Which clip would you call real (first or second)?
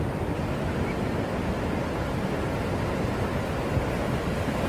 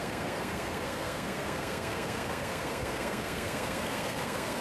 first